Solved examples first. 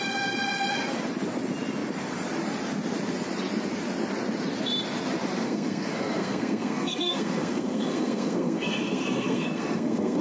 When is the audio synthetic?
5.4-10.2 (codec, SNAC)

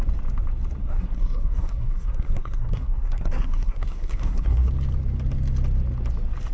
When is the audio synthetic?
0.8-4.7 (codec, SNAC)

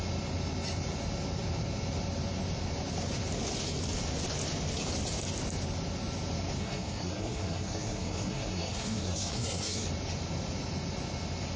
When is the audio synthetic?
6.6-9.9 (codec, SNAC)

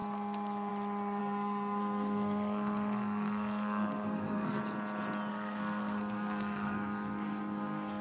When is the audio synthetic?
1.2-4.6 (codec, SNAC); 5.3-8.0

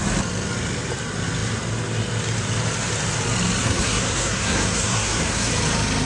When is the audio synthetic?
3.6-5.5 (codec, SNAC)

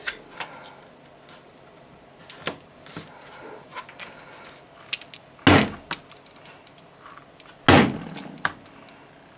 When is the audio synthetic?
none

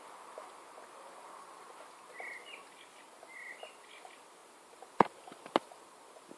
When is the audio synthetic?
none